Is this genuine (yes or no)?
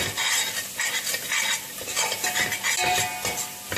yes